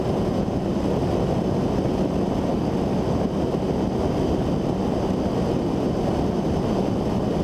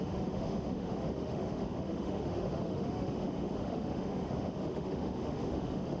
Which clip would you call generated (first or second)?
second